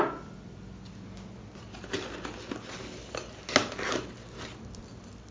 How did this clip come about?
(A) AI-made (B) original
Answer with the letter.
B